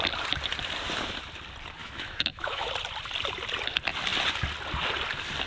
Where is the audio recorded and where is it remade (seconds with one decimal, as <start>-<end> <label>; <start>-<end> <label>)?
0.0-1.8 recorded; 1.8-2.7 remade; 2.7-5.5 recorded